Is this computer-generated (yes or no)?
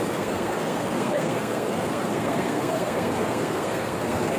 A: yes